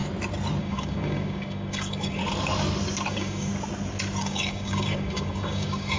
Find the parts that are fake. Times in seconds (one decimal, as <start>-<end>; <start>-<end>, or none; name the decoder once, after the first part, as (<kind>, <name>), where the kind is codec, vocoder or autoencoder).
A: 0.6-2.2 (codec, DAC); 3.1-3.5; 4.2-6.0